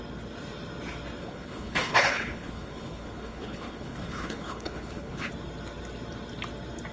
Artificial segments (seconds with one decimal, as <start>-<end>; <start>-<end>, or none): 1.2-5.3